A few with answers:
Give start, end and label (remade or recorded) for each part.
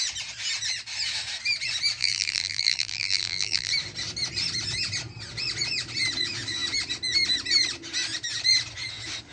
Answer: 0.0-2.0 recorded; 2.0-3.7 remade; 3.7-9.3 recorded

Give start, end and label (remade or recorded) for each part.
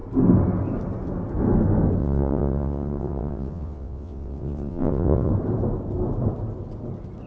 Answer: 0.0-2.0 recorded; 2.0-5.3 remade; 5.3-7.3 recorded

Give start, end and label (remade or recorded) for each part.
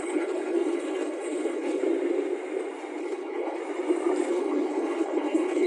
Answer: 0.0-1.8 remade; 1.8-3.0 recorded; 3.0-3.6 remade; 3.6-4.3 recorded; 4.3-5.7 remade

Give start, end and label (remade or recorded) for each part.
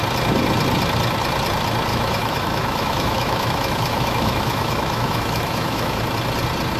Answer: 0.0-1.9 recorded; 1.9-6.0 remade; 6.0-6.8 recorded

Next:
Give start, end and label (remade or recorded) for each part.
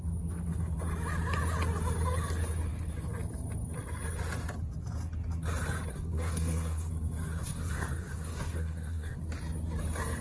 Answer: 0.0-5.9 recorded; 5.9-6.9 remade; 6.9-7.4 recorded; 7.4-9.2 remade; 9.2-10.2 recorded